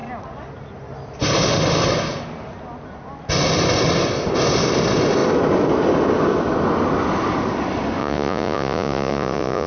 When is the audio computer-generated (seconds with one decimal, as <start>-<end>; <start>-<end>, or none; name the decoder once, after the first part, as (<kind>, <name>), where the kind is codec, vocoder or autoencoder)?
8.0-9.7 (vocoder, Vocos)

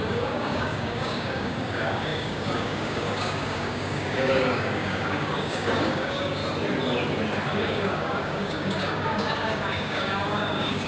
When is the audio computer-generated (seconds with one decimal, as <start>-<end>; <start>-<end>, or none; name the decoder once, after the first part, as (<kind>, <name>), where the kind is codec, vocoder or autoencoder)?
0.0-6.4 (codec, DAC); 7.5-10.9

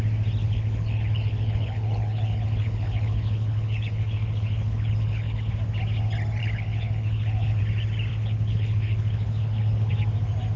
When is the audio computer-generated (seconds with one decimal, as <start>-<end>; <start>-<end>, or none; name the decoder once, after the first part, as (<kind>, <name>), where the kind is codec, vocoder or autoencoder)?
0.4-5.5 (codec, HILCodec); 6.4-7.6; 8.1-9.9

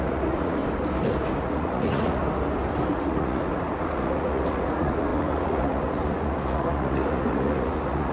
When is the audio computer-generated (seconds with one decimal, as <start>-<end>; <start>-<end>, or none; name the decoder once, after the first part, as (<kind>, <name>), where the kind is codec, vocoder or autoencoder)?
0.0-0.6 (vocoder, Vocos); 1.4-2.2; 2.9-8.1

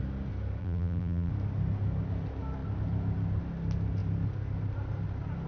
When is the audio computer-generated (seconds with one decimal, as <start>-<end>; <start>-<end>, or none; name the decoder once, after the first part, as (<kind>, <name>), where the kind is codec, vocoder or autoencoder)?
0.6-1.3 (vocoder, BigVGAN v2)

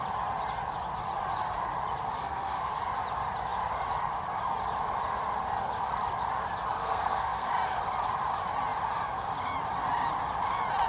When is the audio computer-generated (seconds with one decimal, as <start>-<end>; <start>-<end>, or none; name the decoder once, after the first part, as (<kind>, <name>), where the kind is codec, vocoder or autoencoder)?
2.2-2.7 (codec, SNAC); 6.8-7.5